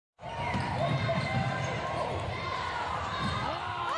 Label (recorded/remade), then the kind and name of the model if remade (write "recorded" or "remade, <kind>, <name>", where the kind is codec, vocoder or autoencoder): remade, vocoder, BigVGAN v2